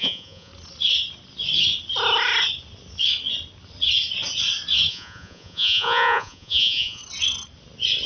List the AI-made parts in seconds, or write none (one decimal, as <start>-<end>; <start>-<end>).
0.0-0.5; 4.9-7.0